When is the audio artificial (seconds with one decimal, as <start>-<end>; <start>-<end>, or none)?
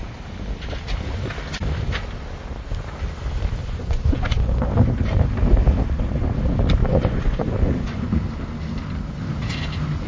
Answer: 3.6-4.7; 6.8-8.2